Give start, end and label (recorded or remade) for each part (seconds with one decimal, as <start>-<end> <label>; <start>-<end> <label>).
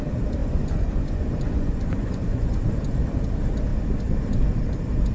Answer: 0.0-0.4 recorded; 0.4-2.8 remade; 2.8-5.1 recorded